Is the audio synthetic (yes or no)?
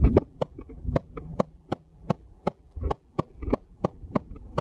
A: yes